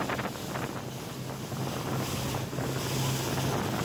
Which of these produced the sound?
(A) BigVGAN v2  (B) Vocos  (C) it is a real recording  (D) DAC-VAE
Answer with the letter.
C